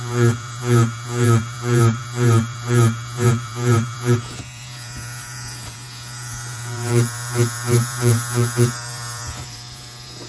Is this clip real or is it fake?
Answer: fake